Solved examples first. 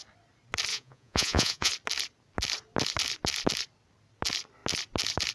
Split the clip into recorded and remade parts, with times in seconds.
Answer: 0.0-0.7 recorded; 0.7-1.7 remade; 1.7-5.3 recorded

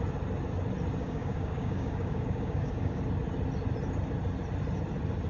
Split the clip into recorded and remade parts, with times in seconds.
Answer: 0.0-1.0 recorded; 1.0-3.0 remade; 3.0-5.3 recorded

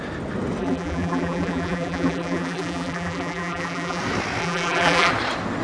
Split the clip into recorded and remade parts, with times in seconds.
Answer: 0.0-0.6 recorded; 0.6-4.0 remade; 4.0-4.4 recorded; 4.4-5.1 remade; 5.1-5.6 recorded

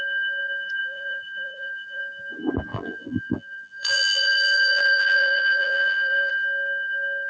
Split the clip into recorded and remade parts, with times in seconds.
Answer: 0.0-0.8 recorded; 0.8-2.0 remade; 2.0-2.7 recorded; 2.7-6.3 remade; 6.3-7.3 recorded

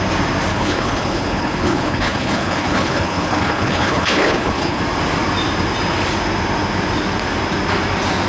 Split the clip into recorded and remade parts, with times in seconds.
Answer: 0.0-0.5 recorded; 0.5-4.8 remade; 4.8-8.3 recorded

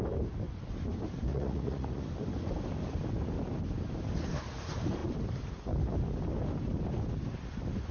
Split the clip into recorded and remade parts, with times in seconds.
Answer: 0.0-1.3 recorded; 1.3-2.0 remade; 2.0-7.9 recorded

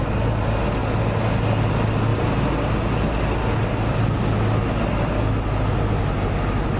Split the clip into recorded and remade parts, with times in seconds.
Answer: 0.0-6.8 recorded

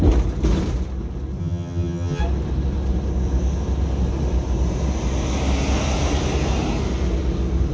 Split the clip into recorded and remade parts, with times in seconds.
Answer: 0.0-1.4 recorded; 1.4-2.2 remade; 2.2-7.7 recorded